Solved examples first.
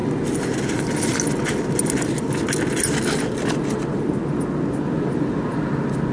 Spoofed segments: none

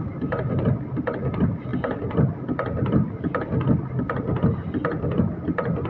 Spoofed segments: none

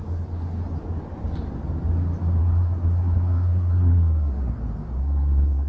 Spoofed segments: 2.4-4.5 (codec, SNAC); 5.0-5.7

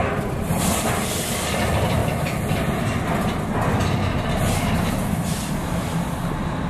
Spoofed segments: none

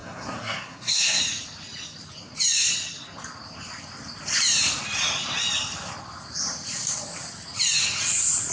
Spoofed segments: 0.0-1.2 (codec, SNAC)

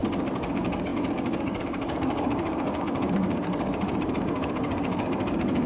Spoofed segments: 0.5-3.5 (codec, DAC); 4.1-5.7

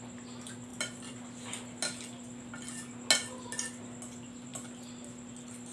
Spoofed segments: none